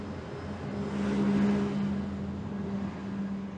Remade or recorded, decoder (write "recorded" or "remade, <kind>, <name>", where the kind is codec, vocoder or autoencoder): recorded